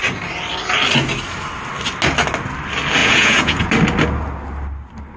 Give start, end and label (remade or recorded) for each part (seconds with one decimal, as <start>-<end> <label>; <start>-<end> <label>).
0.0-3.0 recorded; 3.0-3.7 remade; 3.7-5.2 recorded